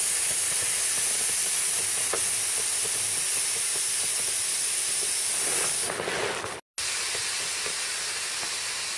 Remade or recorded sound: recorded